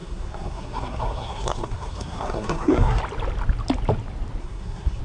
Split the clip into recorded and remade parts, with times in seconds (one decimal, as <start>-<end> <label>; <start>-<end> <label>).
0.0-3.0 remade; 3.0-4.4 recorded; 4.4-5.0 remade